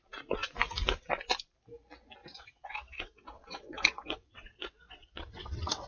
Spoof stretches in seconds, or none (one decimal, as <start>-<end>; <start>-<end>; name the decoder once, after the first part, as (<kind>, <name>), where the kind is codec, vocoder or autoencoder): 2.2-5.9 (vocoder, WaveNeXt)